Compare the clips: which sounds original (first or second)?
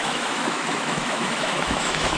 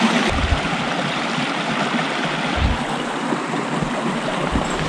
second